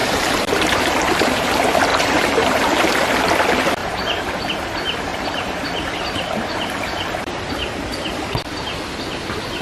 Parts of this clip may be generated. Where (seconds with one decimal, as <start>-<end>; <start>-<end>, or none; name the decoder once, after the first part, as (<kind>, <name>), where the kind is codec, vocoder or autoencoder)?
0.0-1.5 (vocoder, BigVGAN v2); 1.9-3.3; 3.8-4.5; 5.1-7.5